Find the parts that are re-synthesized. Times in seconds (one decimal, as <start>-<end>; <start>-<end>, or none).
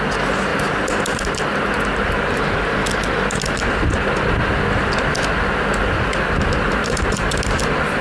6.8-7.3